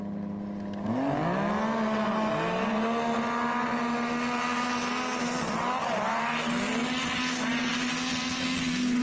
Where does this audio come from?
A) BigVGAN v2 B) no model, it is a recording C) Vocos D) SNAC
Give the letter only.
B